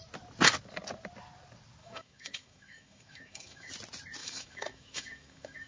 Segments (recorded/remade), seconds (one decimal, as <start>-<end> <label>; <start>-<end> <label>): 0.0-1.8 recorded; 1.8-3.7 remade; 3.7-4.2 recorded; 4.2-5.7 remade